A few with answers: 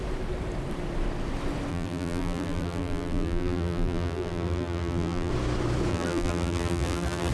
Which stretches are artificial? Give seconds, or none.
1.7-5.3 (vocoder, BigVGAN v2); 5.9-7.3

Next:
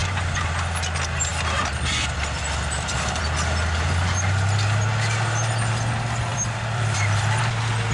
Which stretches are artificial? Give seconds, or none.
0.0-0.5 (vocoder, BigVGAN v2); 1.3-3.2; 6.3-7.4

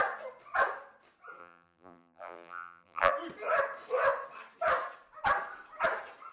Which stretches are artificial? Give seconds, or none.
1.4-3.1 (vocoder, BigVGAN v2)

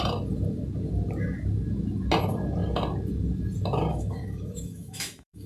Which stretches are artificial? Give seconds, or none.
3.9-5.5 (autoencoder, DAC-VAE)

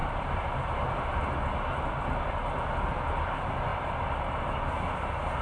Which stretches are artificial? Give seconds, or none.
none

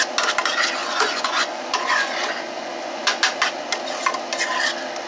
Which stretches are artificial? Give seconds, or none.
0.8-3.2 (vocoder, Vocos)

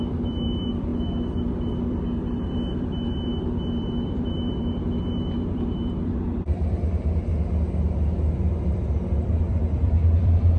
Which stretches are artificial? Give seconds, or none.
0.0-0.9 (vocoder, BigVGAN v2); 1.7-7.3; 8.3-10.6